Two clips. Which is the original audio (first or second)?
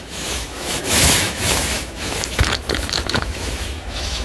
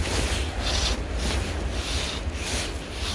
second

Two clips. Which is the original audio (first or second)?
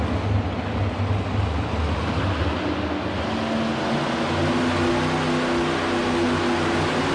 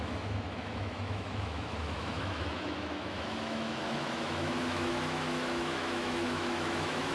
first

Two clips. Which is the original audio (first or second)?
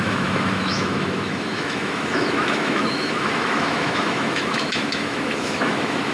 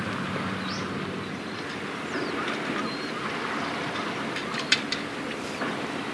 second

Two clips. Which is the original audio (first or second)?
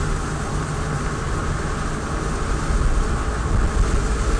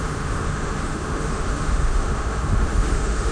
first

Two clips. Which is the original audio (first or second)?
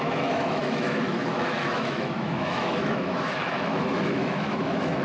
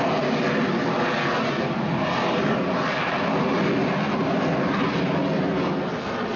second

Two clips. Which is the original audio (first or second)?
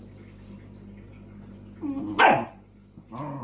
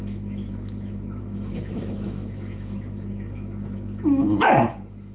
first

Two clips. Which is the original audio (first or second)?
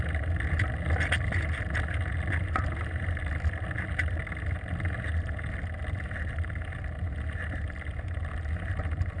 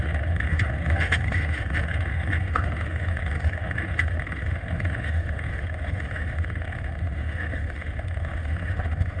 first